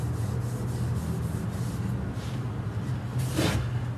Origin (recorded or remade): recorded